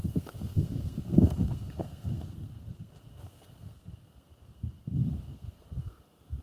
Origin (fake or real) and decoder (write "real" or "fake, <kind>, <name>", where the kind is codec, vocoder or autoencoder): fake, codec, SNAC